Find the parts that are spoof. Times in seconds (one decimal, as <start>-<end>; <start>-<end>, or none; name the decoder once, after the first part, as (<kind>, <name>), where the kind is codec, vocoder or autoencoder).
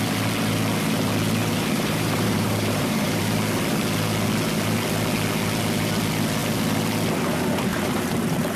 1.4-3.2 (vocoder, BigVGAN v2); 7.7-8.6